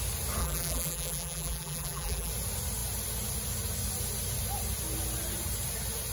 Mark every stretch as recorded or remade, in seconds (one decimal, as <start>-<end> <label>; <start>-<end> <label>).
0.0-0.4 recorded; 0.4-2.3 remade; 2.3-6.1 recorded